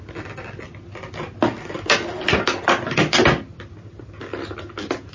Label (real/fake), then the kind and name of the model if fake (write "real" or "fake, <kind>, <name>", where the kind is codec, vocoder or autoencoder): real